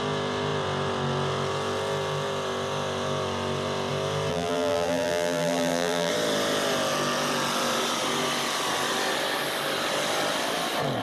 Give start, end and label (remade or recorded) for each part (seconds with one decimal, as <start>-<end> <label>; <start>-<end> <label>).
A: 0.0-4.3 recorded; 4.3-6.1 remade; 6.1-11.0 recorded